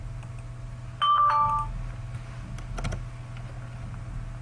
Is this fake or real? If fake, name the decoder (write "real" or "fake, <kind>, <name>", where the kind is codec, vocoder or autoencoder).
real